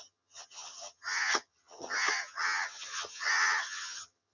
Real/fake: fake